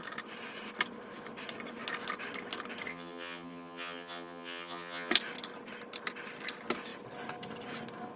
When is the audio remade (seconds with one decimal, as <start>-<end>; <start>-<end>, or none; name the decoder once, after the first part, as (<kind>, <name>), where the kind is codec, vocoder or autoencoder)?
2.9-5.1 (vocoder, HiFi-GAN)